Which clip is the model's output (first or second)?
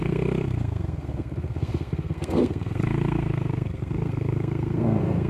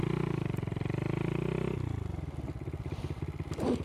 first